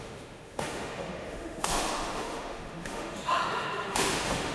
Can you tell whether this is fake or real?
fake